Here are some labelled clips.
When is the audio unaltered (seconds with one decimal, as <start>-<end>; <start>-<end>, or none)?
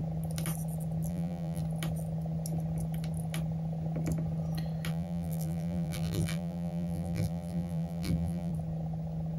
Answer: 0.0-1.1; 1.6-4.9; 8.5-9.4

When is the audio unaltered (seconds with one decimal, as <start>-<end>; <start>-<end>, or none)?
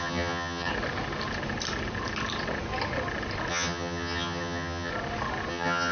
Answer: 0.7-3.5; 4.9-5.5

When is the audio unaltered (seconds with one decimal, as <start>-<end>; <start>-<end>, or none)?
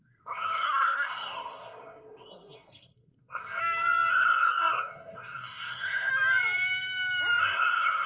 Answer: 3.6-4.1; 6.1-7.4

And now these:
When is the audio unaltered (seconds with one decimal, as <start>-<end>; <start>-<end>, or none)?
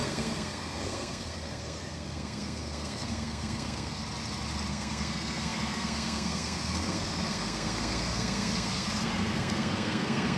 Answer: 4.0-4.7